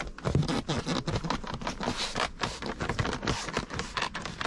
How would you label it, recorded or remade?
recorded